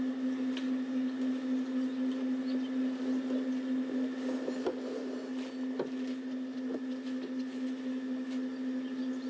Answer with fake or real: real